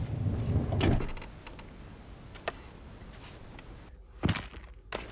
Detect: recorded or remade recorded